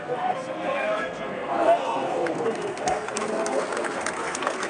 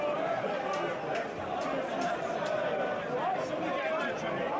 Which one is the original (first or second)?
second